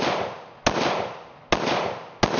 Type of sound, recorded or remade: recorded